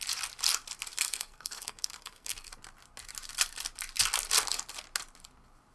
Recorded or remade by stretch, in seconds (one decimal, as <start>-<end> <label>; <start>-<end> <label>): 0.0-0.9 recorded; 0.9-2.5 remade; 2.5-5.7 recorded